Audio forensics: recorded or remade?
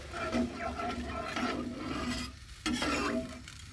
recorded